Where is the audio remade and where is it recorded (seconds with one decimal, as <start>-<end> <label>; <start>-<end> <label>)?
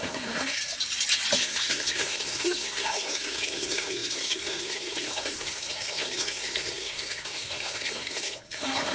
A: 0.0-0.6 remade; 0.6-1.4 recorded; 1.4-8.9 remade